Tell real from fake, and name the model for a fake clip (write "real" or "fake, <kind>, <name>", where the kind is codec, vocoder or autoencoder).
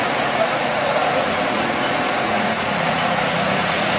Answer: fake, vocoder, Vocos